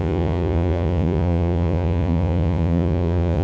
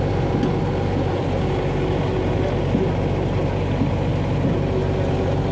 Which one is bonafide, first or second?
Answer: second